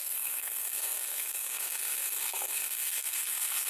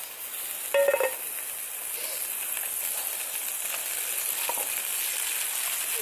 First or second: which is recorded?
second